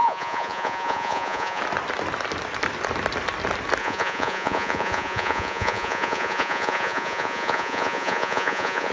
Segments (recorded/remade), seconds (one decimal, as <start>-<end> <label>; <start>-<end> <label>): 0.0-1.6 remade; 1.6-3.8 recorded; 3.8-8.9 remade